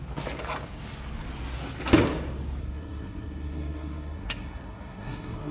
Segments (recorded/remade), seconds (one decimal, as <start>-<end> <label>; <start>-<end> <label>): 0.0-2.6 recorded; 2.6-5.5 remade